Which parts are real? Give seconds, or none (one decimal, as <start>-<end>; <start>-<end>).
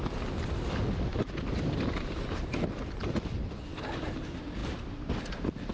0.0-5.7